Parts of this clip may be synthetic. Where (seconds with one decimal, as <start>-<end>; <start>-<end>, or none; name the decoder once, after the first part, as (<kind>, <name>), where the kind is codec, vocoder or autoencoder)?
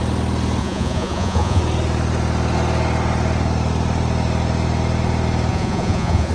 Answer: 0.6-1.6 (vocoder, Vocos); 5.5-6.3